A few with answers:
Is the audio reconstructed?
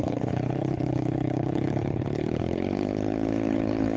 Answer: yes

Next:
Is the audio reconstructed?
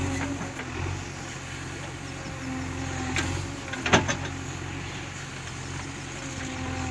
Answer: no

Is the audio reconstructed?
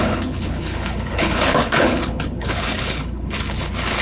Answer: yes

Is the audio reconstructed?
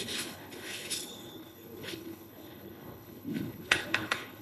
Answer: yes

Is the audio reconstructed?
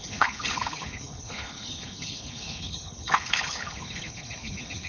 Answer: yes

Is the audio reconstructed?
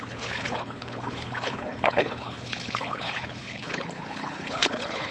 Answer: yes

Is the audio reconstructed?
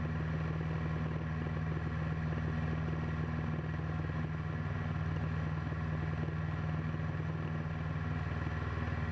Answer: no